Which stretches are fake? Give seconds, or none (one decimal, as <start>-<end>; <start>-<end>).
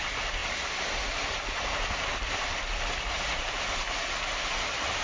none